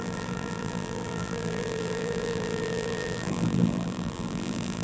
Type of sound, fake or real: fake